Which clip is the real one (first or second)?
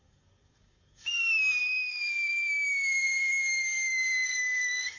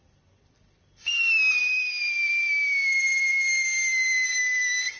second